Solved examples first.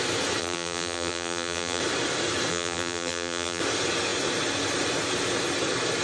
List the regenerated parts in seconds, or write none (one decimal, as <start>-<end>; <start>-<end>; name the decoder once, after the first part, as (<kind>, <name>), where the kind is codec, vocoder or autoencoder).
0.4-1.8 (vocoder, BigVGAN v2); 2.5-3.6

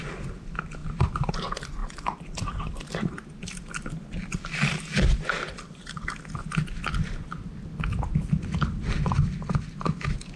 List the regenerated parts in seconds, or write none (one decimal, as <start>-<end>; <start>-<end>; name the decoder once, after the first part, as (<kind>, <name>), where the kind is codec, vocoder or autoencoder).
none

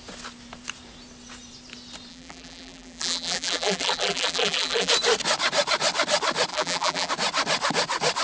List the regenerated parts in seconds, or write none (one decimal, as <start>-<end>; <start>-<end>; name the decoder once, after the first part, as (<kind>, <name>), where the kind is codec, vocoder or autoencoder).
2.1-4.9 (vocoder, BigVGAN v2); 6.5-7.1

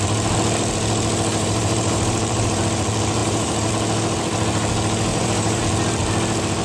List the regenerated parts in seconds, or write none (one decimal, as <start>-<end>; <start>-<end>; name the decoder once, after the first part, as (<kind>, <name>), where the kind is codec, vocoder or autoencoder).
1.3-2.6 (vocoder, BigVGAN v2); 3.2-3.7; 5.1-5.6

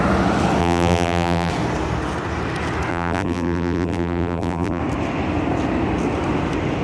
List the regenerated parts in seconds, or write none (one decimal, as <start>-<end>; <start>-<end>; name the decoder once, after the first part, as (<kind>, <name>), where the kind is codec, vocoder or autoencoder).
0.6-1.5 (vocoder, BigVGAN v2); 2.9-4.8

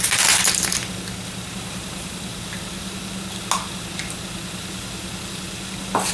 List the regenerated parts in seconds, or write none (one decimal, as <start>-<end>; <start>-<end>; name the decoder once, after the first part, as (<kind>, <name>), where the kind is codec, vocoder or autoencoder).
0.0-0.8 (vocoder, BigVGAN v2); 1.5-2.3

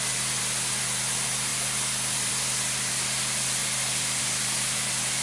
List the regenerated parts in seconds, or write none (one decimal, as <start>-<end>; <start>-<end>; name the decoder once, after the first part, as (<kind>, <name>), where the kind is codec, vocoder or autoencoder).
none